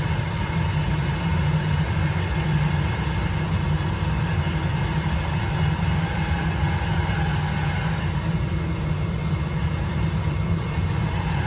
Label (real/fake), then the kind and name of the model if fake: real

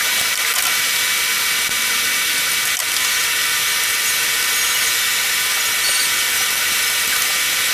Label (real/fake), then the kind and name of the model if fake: real